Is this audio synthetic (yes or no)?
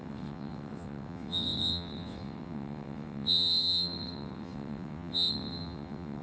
yes